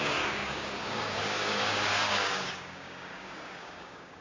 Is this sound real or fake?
fake